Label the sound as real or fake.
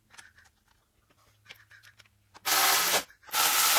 real